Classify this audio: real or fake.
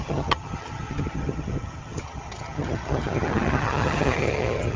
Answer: fake